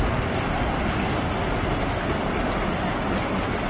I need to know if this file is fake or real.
real